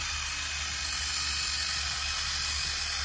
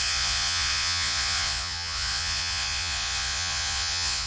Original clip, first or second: first